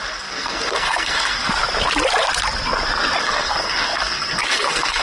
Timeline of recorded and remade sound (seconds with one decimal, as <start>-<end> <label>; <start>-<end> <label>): 0.0-1.5 remade; 1.5-3.2 recorded; 3.2-5.0 remade